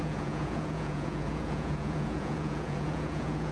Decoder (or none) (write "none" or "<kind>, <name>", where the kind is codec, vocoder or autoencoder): vocoder, Vocos